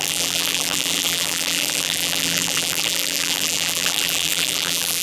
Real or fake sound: fake